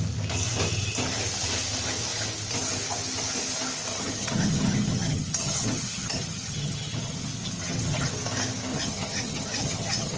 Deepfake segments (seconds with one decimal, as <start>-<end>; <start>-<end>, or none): 3.9-8.1; 8.7-10.2